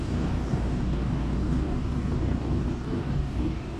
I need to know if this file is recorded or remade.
remade